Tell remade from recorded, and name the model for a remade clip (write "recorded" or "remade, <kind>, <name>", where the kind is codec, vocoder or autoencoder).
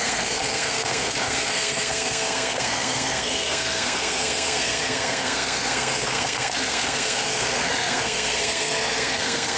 remade, codec, SNAC